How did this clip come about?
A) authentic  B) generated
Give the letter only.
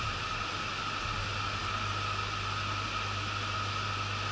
A